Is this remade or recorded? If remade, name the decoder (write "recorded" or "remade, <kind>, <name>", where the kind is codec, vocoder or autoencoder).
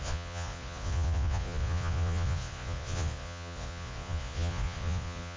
remade, vocoder, Vocos